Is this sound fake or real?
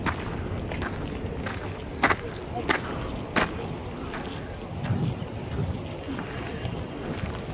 real